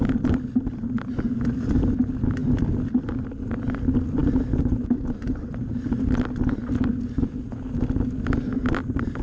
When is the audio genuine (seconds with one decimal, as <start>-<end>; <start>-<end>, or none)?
0.0-9.2